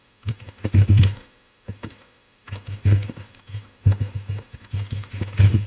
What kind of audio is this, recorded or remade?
remade